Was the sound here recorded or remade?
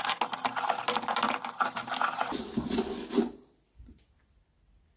recorded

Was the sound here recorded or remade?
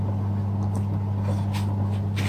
recorded